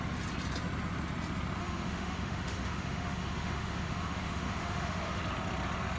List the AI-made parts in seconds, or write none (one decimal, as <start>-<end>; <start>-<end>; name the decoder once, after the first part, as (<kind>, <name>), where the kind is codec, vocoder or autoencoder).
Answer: 1.6-5.2 (autoencoder, DAC-VAE)